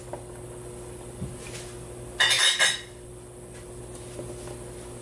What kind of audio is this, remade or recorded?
recorded